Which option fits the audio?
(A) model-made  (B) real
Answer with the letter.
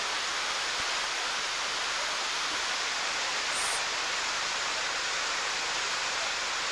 B